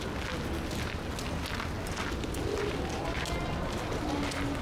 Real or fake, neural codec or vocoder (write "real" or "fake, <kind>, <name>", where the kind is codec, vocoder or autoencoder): real